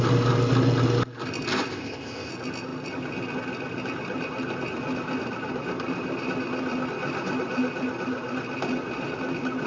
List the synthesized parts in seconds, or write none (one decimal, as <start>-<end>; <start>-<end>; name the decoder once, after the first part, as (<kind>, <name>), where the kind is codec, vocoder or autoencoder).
1.7-2.3 (codec, ZipCodec)